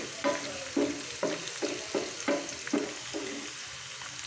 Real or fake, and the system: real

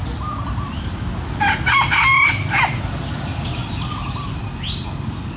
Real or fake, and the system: real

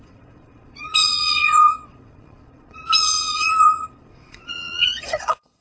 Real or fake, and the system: fake, vocoder, Vocos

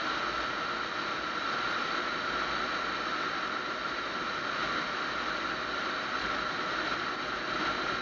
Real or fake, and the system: real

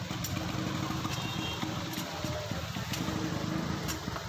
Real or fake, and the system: real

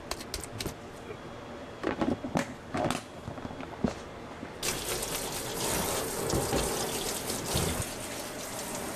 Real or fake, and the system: real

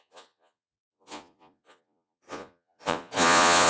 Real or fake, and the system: fake, vocoder, Vocos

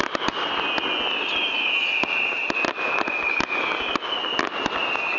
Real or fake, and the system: real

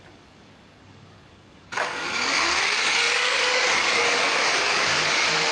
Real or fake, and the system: fake, codec, DAC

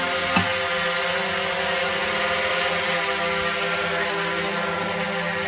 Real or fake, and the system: real